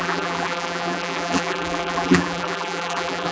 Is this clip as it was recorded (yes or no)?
no